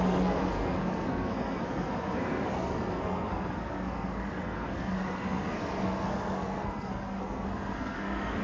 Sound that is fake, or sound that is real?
fake